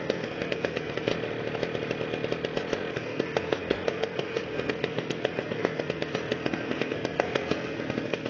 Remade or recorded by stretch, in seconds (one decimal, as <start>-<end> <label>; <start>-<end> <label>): 0.0-1.1 remade; 1.1-2.9 recorded; 2.9-8.3 remade